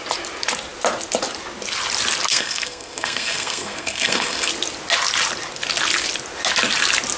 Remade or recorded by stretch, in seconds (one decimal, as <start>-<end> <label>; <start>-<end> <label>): 0.0-2.3 recorded; 2.3-4.5 remade; 4.5-7.2 recorded